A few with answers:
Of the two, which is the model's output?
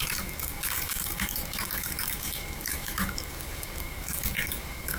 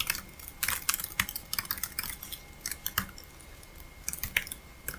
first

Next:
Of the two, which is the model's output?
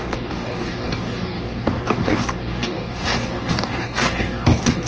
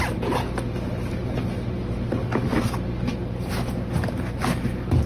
first